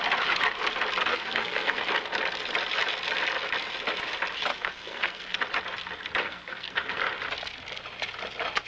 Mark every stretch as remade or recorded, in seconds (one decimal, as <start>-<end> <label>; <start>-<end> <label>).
0.0-1.1 recorded; 1.1-1.8 remade; 1.8-4.5 recorded; 4.5-5.4 remade; 5.4-6.2 recorded; 6.2-7.0 remade; 7.0-8.7 recorded